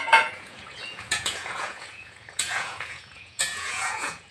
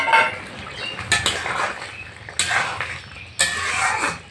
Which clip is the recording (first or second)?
second